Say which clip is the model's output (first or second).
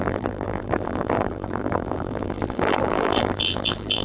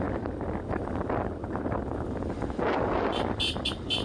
first